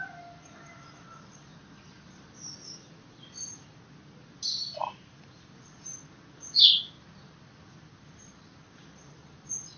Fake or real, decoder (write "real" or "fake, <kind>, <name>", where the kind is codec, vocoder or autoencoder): real